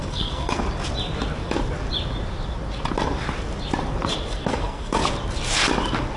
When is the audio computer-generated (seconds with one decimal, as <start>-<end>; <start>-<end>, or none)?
0.0-0.6; 4.3-5.0